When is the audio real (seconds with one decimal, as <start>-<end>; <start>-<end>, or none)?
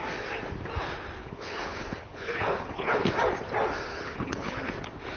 0.0-1.2; 3.1-3.9; 4.7-5.2